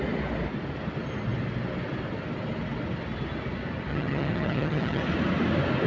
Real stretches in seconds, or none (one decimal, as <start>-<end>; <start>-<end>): 0.0-3.9; 5.0-5.9